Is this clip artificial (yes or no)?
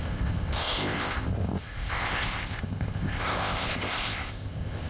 yes